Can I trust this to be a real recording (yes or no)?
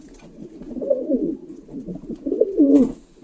no